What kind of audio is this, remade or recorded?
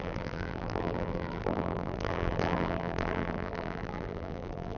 remade